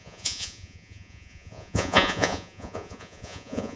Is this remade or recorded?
remade